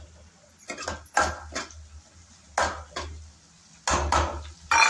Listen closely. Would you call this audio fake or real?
real